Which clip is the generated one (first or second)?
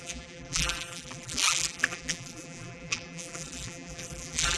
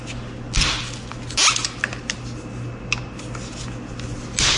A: first